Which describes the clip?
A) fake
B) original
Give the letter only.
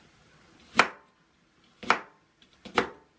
B